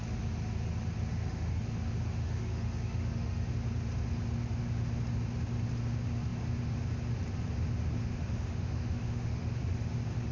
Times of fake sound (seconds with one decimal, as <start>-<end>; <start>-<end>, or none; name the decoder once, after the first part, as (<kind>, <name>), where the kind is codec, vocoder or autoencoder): 1.1-1.6 (autoencoder, DAC-VAE); 2.2-3.5; 8.0-9.6